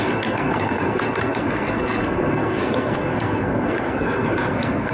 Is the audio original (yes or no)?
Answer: no